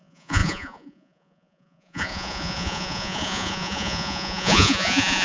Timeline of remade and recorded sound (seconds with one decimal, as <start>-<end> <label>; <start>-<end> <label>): 0.0-5.2 remade